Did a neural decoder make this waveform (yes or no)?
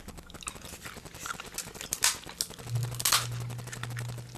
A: no